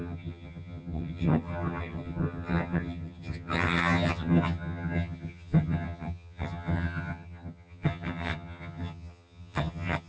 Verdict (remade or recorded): remade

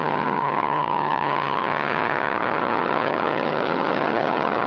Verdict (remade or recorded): remade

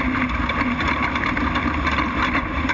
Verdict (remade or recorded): recorded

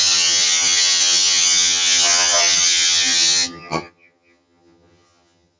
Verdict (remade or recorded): remade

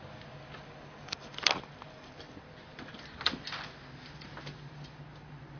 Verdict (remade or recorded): recorded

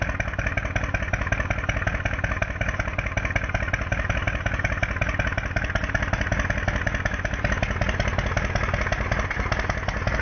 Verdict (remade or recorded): recorded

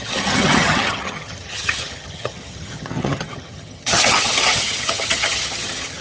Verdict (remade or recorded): remade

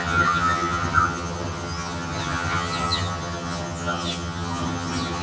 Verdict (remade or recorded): remade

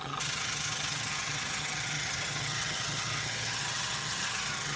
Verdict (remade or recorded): remade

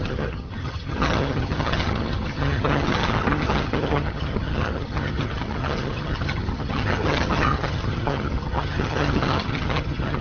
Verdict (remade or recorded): remade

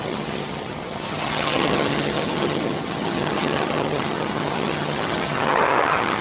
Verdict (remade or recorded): remade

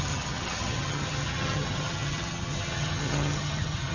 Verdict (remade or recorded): remade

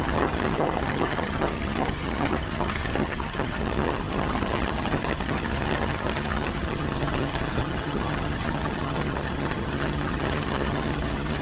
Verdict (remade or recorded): remade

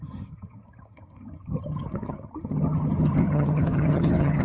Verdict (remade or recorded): remade